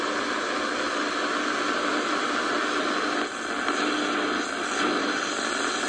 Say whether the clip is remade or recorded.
recorded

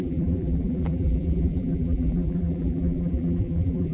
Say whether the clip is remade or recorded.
remade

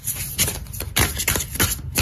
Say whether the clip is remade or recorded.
recorded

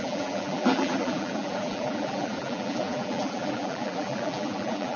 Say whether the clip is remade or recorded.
remade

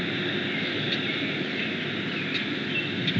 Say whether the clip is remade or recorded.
recorded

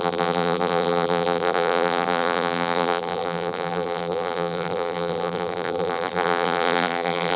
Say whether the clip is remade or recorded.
remade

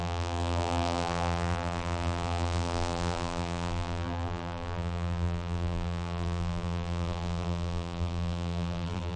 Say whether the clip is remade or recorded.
remade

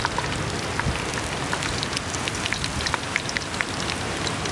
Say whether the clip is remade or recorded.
recorded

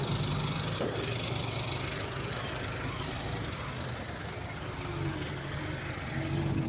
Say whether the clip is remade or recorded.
remade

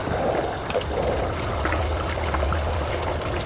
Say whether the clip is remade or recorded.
recorded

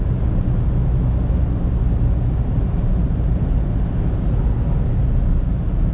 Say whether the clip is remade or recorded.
recorded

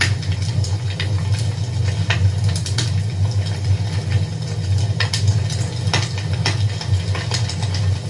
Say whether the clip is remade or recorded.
recorded